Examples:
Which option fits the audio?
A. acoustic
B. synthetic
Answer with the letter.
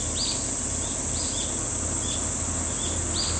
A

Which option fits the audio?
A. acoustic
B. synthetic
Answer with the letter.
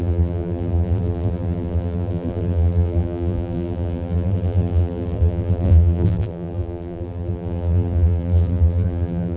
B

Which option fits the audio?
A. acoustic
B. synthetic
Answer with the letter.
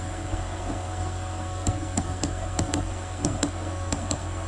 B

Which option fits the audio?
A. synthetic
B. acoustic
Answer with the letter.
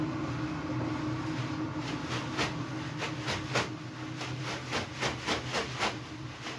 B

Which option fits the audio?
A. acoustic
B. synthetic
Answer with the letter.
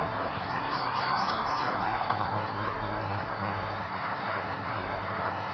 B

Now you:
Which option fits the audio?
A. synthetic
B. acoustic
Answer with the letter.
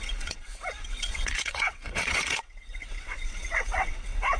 A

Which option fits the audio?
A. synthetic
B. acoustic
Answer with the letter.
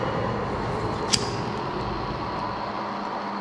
B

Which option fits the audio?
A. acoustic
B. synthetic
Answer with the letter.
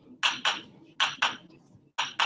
A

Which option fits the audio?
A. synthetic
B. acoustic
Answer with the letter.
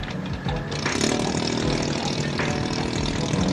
B